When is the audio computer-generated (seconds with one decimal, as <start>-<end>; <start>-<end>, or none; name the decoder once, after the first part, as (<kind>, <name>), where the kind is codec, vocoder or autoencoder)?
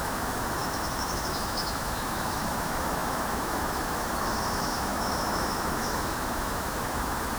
0.0-7.4 (autoencoder, DAC-VAE)